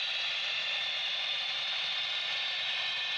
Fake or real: real